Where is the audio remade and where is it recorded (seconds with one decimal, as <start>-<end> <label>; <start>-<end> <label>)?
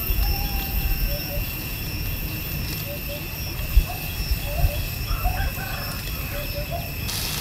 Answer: 0.0-2.4 remade; 2.4-7.4 recorded